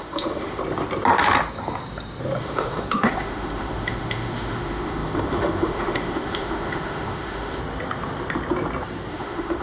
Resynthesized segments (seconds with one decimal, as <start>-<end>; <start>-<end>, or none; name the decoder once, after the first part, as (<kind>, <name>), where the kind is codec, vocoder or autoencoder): 0.0-0.6 (autoencoder, DAC-VAE); 2.4-7.6; 9.1-9.6